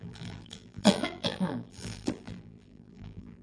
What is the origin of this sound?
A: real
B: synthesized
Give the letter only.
B